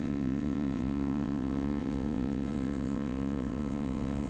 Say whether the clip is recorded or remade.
remade